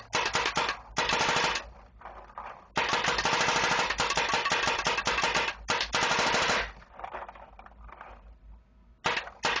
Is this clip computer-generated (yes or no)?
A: no